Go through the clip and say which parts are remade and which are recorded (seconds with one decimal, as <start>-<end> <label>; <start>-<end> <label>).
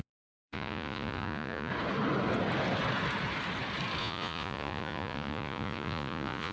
0.0-1.7 remade; 1.7-4.0 recorded; 4.0-6.5 remade